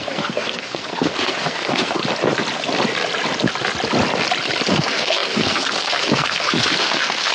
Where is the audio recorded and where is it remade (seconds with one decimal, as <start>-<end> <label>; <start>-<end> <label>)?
0.0-2.0 remade; 2.0-4.7 recorded; 4.7-7.3 remade

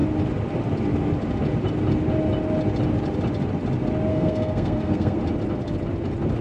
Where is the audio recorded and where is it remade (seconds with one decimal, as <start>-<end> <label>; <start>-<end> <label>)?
0.0-4.1 recorded; 4.1-5.2 remade; 5.2-6.4 recorded

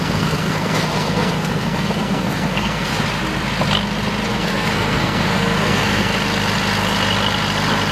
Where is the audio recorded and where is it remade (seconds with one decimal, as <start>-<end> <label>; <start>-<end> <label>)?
0.0-2.9 remade; 2.9-4.3 recorded; 4.3-6.1 remade; 6.1-7.9 recorded

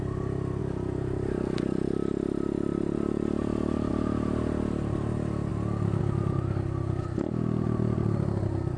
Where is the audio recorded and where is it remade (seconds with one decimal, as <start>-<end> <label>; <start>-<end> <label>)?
0.0-8.8 recorded

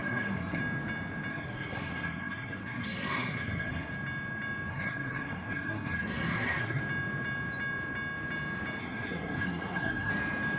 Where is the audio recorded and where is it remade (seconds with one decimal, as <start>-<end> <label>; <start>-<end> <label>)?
0.0-0.6 remade; 0.6-1.3 recorded; 1.3-3.9 remade; 3.9-4.7 recorded; 4.7-6.8 remade; 6.8-8.8 recorded; 8.8-10.1 remade; 10.1-10.6 recorded

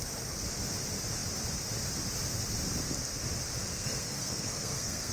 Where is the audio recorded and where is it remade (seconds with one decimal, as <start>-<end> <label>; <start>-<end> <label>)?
0.0-3.7 recorded; 3.7-5.1 remade

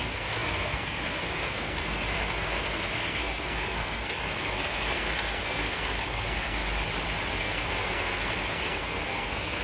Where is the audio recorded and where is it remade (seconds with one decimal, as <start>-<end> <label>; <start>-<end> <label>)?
0.0-6.6 remade; 6.6-7.4 recorded; 7.4-9.6 remade